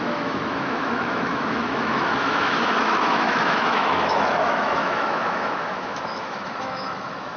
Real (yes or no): no